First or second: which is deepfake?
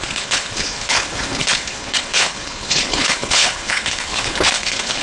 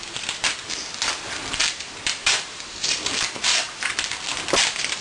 first